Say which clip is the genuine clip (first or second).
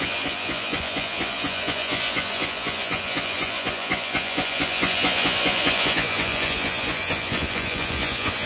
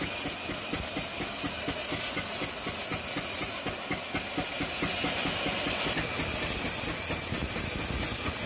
second